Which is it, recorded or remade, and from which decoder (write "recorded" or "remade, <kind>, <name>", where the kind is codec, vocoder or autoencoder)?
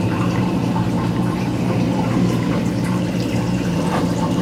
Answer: remade, vocoder, BigVGAN v2